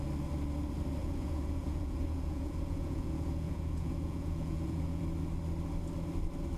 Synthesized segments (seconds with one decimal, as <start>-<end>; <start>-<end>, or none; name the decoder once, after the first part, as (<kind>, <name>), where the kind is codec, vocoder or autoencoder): 1.0-5.0 (vocoder, Vocos)